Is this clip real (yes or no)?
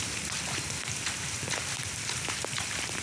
yes